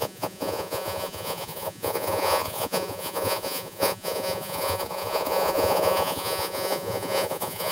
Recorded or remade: remade